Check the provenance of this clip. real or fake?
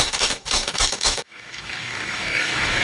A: fake